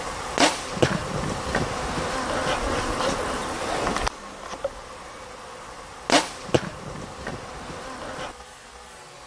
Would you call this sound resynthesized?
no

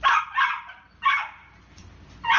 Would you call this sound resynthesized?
no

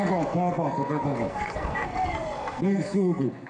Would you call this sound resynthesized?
yes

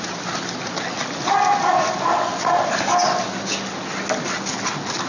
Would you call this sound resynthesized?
no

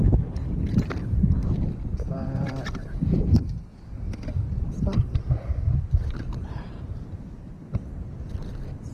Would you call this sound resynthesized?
no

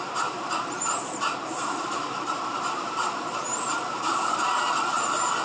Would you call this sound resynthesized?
yes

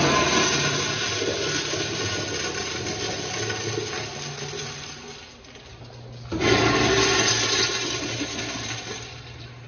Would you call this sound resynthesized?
no